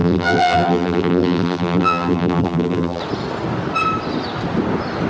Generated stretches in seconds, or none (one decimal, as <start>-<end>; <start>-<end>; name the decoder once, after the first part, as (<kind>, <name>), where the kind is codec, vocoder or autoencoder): 0.0-3.0 (vocoder, BigVGAN v2)